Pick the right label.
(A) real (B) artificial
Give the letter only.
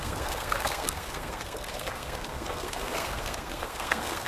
B